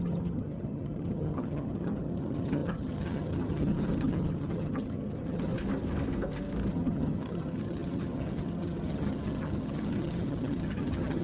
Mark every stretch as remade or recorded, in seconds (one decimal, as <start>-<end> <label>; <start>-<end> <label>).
0.0-5.5 remade; 5.5-6.7 recorded; 6.7-11.2 remade